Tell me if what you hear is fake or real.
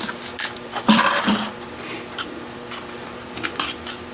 fake